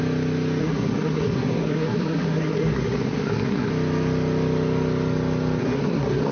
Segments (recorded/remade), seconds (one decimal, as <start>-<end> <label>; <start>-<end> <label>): 0.0-0.6 recorded; 0.6-3.7 remade; 3.7-5.6 recorded; 5.6-6.3 remade